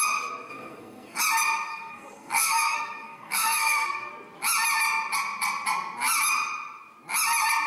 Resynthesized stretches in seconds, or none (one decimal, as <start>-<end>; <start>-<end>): 0.5-1.2; 1.7-4.1